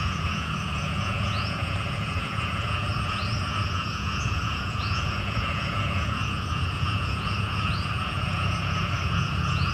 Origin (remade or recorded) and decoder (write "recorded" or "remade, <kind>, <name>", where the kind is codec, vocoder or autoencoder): remade, vocoder, Vocos